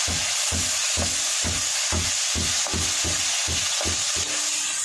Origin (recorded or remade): recorded